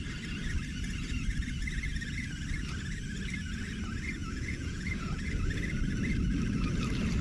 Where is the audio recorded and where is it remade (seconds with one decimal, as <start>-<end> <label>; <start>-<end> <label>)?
0.0-4.2 recorded; 4.2-5.4 remade; 5.4-7.2 recorded